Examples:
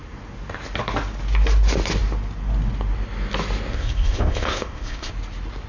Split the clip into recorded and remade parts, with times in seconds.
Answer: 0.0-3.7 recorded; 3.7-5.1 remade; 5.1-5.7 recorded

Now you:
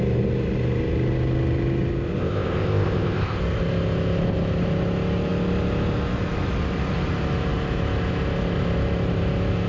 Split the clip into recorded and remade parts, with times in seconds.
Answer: 0.0-2.2 recorded; 2.2-3.4 remade; 3.4-9.7 recorded